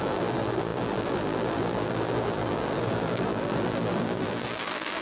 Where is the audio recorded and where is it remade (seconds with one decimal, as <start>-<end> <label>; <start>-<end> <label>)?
0.0-5.0 remade